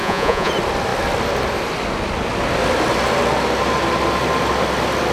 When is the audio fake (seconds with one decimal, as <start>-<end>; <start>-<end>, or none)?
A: 0.0-0.5